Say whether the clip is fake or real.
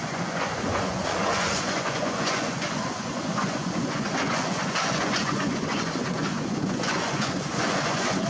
fake